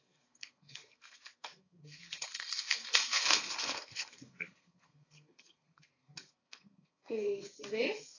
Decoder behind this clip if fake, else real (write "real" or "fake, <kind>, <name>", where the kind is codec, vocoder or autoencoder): fake, codec, SNAC